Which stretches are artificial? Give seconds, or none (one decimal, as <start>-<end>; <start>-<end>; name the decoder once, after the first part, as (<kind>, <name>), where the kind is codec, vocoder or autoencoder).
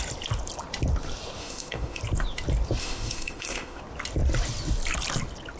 1.4-2.0 (autoencoder, DAC-VAE); 2.8-3.8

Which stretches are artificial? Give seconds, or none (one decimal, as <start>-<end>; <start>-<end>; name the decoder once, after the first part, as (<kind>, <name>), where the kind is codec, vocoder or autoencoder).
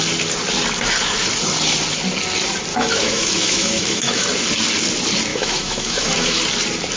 2.7-4.3 (autoencoder, DAC-VAE); 5.3-6.4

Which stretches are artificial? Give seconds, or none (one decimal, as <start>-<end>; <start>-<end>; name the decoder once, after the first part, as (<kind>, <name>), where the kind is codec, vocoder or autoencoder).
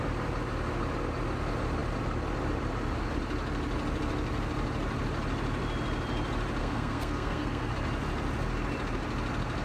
6.6-7.7 (codec, SNAC)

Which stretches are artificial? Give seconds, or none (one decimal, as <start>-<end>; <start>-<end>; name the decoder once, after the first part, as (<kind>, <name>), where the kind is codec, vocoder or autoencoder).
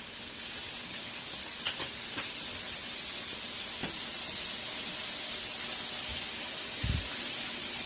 0.8-1.3 (codec, HILCodec)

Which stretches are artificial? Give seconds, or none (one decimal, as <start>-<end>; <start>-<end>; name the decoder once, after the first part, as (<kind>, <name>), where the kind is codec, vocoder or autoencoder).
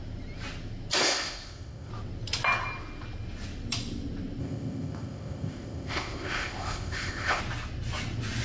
1.0-1.9 (codec, ZipCodec); 4.4-7.4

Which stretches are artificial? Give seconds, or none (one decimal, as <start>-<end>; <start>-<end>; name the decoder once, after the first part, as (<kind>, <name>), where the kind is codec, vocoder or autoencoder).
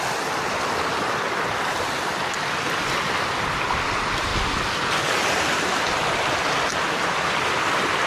none